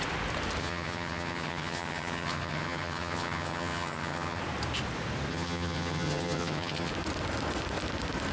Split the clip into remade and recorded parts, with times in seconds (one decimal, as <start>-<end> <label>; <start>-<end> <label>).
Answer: 0.0-0.6 recorded; 0.6-4.4 remade; 4.4-5.3 recorded; 5.3-6.9 remade; 6.9-8.3 recorded